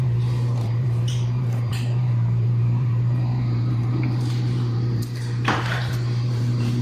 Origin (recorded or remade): remade